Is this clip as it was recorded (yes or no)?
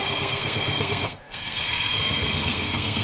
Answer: no